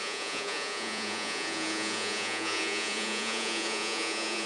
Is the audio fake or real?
fake